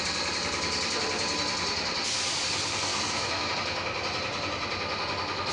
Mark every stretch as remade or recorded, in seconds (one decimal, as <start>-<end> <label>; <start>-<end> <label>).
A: 0.0-2.9 recorded; 2.9-3.5 remade; 3.5-5.5 recorded